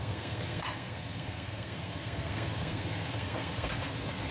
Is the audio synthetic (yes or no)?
yes